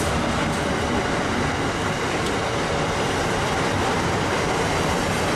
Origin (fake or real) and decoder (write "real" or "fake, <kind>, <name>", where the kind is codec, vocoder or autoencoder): real